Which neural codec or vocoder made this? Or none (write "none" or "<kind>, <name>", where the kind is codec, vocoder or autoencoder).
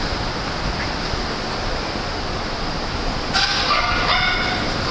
none